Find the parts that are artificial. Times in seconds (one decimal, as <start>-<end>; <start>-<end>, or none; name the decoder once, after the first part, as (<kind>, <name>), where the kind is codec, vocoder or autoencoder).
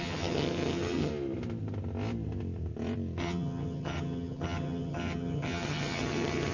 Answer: 0.0-1.1 (vocoder, HiFi-GAN); 3.2-6.5